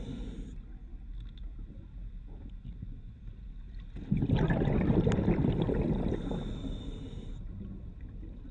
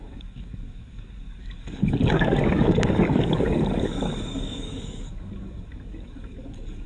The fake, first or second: second